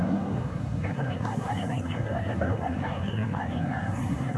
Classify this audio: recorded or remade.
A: remade